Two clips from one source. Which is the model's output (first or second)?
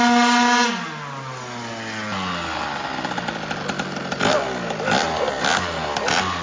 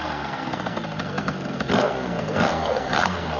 second